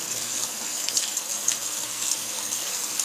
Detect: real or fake fake